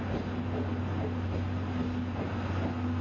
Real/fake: real